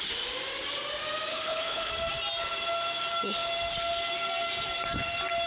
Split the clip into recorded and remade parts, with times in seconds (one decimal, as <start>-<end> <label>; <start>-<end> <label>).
0.0-1.3 recorded; 1.3-1.9 remade; 1.9-5.5 recorded